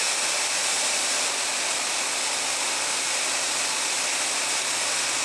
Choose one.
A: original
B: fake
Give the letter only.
A